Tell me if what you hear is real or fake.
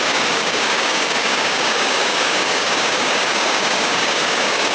fake